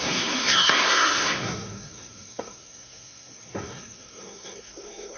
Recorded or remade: remade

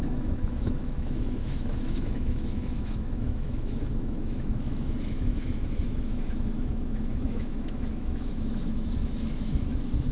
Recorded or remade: remade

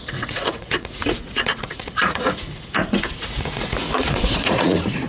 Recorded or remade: remade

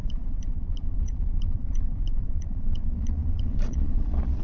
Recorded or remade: remade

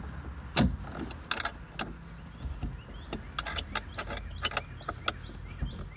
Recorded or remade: recorded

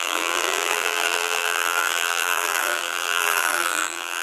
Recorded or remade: remade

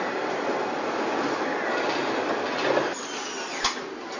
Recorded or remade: recorded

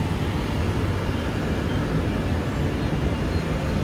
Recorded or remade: recorded